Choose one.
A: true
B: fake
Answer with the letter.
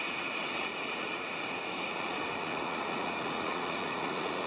B